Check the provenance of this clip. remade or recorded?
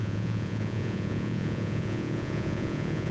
remade